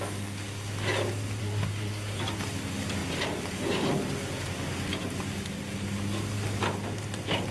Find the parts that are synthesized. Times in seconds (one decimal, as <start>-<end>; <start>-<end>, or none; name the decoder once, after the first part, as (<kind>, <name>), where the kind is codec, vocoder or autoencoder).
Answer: 1.4-2.2 (codec, SNAC)

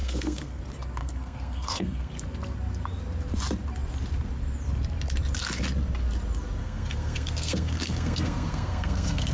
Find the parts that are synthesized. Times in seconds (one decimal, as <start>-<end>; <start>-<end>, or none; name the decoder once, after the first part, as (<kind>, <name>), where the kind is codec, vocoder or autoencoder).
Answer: 0.0-0.6 (codec, SNAC); 1.0-2.1; 6.6-9.3

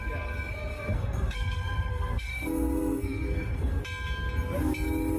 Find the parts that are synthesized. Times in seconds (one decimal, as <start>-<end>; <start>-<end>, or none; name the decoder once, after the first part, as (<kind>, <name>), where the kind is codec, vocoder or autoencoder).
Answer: 0.7-3.8 (codec, SNAC)

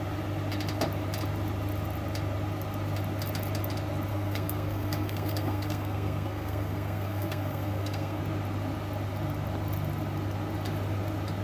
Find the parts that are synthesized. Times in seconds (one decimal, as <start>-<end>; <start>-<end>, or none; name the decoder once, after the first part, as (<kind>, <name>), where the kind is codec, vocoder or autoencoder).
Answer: 4.1-8.2 (codec, SNAC)

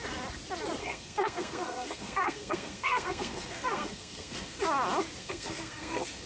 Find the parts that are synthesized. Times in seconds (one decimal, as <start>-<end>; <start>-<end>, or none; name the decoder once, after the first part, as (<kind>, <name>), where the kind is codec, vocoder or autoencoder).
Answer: 0.8-4.6 (codec, SNAC); 5.2-6.3

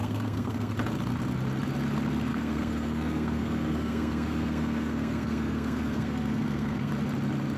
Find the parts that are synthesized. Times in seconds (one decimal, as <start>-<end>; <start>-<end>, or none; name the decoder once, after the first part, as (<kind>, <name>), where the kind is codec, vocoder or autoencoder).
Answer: 0.0-0.7 (codec, SNAC); 2.3-6.9

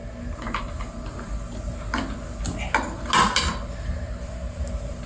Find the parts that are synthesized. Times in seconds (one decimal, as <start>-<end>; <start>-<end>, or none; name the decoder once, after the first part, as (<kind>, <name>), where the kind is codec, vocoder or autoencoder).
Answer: none